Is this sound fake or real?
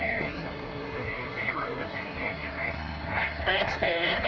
fake